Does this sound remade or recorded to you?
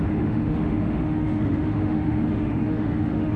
remade